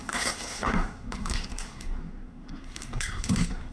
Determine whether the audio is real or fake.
fake